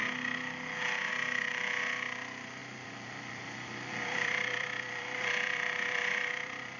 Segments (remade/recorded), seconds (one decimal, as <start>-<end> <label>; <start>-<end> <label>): 0.0-2.6 recorded; 2.6-6.8 remade